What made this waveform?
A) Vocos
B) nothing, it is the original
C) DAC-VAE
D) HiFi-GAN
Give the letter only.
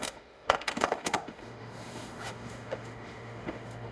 C